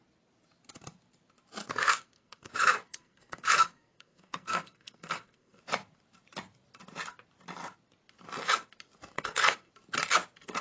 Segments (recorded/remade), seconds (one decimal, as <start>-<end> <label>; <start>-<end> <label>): 0.0-1.6 recorded; 1.6-5.6 remade; 5.6-9.1 recorded; 9.1-9.7 remade; 9.7-10.6 recorded